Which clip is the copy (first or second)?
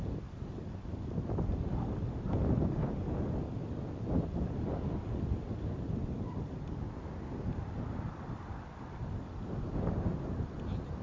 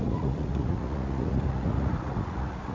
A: second